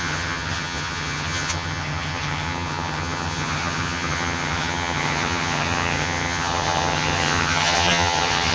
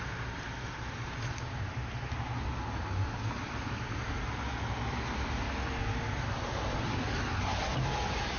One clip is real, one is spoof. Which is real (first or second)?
second